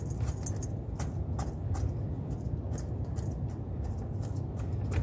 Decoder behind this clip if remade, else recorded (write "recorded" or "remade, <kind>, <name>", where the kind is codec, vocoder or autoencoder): recorded